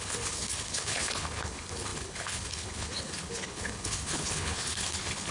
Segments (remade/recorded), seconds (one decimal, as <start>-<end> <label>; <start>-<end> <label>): 0.0-5.3 remade